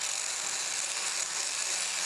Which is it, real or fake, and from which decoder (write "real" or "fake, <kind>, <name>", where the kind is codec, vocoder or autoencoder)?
real